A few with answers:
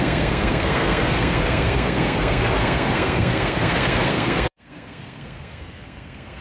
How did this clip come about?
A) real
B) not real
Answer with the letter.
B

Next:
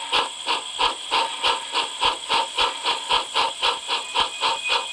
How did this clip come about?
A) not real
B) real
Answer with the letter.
B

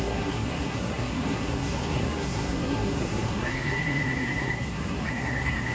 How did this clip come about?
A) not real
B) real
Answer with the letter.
A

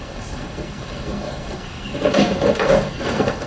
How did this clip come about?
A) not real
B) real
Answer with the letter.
A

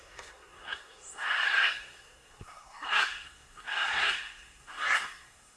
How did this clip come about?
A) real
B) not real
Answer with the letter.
B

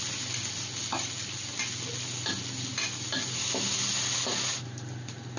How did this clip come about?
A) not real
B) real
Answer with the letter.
B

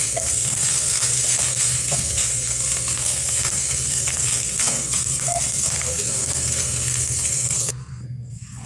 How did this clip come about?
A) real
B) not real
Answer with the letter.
B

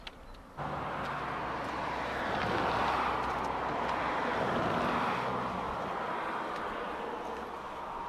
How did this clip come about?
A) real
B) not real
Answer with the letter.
A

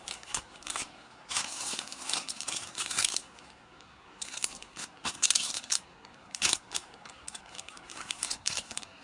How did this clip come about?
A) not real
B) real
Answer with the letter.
A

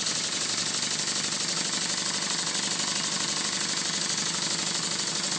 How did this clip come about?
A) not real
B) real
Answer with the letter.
B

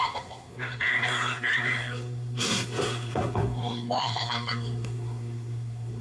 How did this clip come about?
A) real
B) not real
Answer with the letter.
B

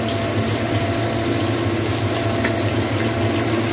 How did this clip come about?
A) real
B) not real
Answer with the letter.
A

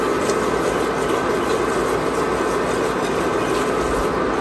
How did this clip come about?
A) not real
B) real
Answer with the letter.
B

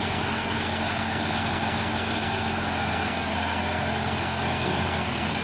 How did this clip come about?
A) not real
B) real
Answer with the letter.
A